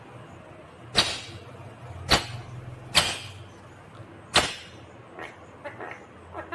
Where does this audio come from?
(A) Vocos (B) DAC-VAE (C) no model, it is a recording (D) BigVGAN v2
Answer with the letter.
C